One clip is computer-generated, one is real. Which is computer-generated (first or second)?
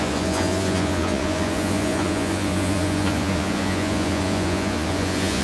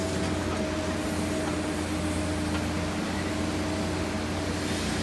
first